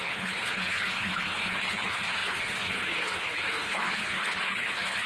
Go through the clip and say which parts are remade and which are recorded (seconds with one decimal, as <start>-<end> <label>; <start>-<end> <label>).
0.0-5.1 remade